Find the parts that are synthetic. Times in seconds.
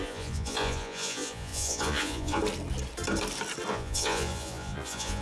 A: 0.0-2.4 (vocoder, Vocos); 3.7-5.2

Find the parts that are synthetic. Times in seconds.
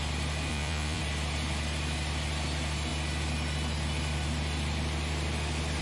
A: 0.5-1.0 (vocoder, Vocos)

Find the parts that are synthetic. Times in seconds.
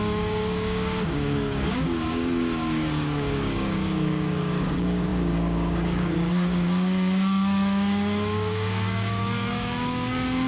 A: 0.0-10.5 (codec, DAC)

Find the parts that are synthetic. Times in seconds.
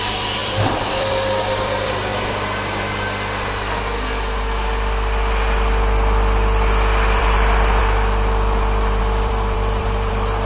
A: 0.0-2.1 (vocoder, BigVGAN v2); 7.2-7.8; 9.0-10.5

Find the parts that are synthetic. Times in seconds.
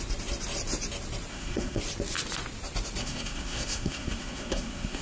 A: 1.3-1.8 (codec, SNAC); 3.0-5.0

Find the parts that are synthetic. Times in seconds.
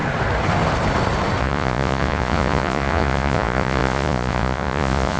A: 1.4-5.2 (vocoder, Vocos)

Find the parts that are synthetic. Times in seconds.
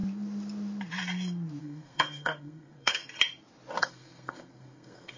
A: 1.6-3.0 (codec, SNAC); 3.8-5.2